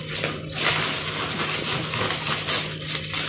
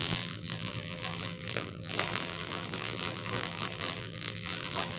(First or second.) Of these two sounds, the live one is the first